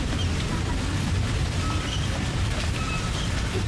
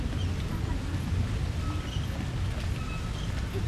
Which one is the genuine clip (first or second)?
second